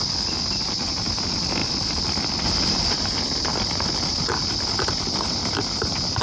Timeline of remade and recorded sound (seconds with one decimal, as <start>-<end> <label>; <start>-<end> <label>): 0.0-6.2 recorded

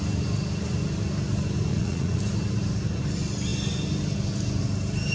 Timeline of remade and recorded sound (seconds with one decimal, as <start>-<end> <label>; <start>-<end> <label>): 0.0-1.7 recorded; 1.7-2.2 remade; 2.2-5.1 recorded

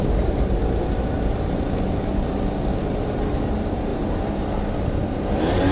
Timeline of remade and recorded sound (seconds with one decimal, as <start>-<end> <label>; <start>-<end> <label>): 0.0-0.6 remade; 0.6-3.4 recorded; 3.4-3.9 remade; 3.9-5.2 recorded; 5.2-5.7 remade

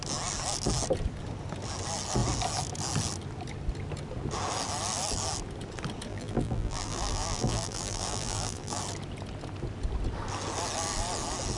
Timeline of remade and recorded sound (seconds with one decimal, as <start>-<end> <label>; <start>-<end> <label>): 0.0-6.1 recorded; 6.1-8.8 remade; 8.8-11.6 recorded

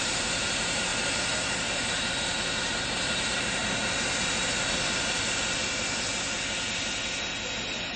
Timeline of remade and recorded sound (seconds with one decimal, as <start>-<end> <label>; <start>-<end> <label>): 0.0-0.9 remade; 0.9-1.5 recorded; 1.5-3.6 remade; 3.6-8.0 recorded